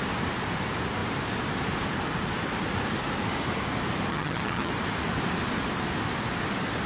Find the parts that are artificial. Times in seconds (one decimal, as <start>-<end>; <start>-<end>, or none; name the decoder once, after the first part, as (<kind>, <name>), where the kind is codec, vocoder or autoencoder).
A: 4.1-4.7 (vocoder, HiFi-GAN)